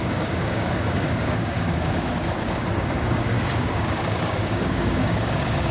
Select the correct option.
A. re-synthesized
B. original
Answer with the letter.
A